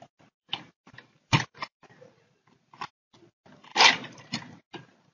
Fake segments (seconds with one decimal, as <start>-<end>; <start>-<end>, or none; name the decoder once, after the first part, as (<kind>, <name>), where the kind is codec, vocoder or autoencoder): 0.4-2.3 (vocoder, BigVGAN v2); 3.7-4.6